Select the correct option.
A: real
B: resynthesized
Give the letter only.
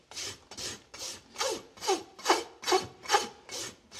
A